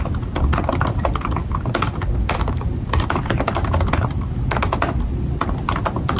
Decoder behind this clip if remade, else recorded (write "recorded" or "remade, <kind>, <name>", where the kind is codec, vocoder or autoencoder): recorded